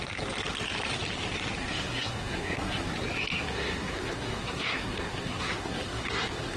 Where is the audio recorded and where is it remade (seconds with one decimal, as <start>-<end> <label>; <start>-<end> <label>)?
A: 0.0-1.6 recorded; 1.6-2.9 remade; 2.9-3.3 recorded; 3.3-6.6 remade